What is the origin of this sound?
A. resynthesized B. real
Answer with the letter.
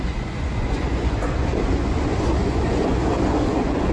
A